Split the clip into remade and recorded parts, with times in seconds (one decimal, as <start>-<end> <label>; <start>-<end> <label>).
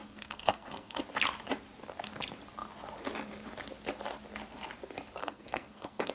0.0-1.0 remade; 1.0-5.2 recorded; 5.2-6.1 remade